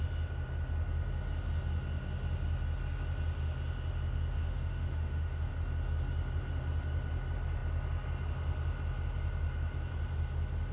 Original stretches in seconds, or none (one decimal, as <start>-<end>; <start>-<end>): 0.0-4.4; 5.5-10.7